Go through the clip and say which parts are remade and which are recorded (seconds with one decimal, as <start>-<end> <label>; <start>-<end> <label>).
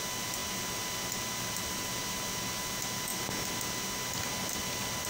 0.0-5.1 recorded